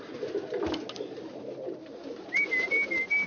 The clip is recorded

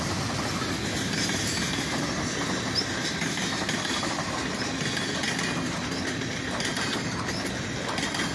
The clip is recorded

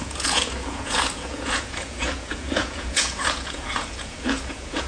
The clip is remade